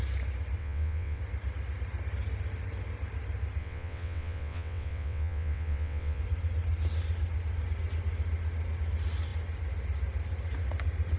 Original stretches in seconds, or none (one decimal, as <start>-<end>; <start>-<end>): 0.0-0.6; 1.2-3.6; 6.2-11.2